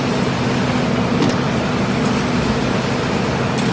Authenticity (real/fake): real